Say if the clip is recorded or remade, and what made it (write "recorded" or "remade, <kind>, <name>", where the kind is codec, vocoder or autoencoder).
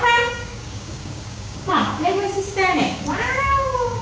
remade, codec, DAC